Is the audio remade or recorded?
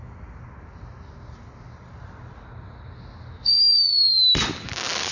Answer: recorded